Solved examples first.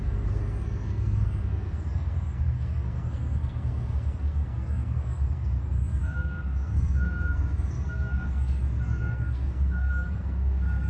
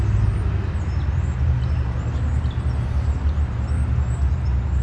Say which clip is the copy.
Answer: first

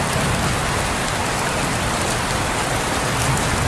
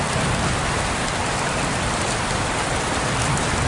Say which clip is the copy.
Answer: second